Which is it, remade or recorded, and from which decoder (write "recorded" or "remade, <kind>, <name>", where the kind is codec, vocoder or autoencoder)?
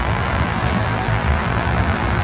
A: remade, vocoder, BigVGAN v2